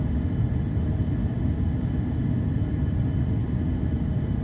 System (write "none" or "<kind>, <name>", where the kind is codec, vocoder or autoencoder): none